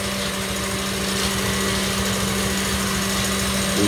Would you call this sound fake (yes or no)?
no